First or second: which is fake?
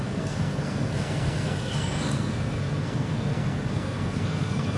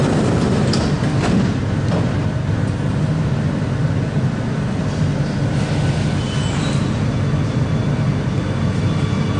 first